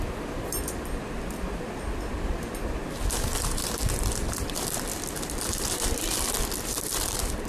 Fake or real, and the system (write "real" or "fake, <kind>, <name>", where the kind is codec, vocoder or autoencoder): real